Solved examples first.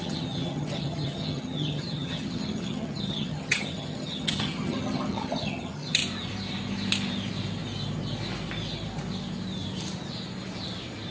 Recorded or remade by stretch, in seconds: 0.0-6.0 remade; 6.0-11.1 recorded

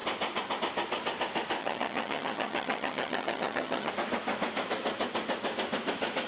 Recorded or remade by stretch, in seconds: 0.0-1.6 recorded; 1.6-3.9 remade; 3.9-6.3 recorded

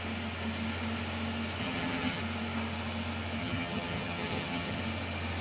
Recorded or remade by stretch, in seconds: 0.0-1.6 recorded; 1.6-2.2 remade; 2.2-3.4 recorded; 3.4-4.8 remade; 4.8-5.4 recorded